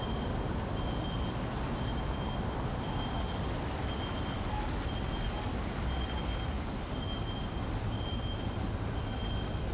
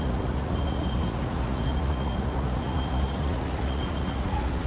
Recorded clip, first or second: first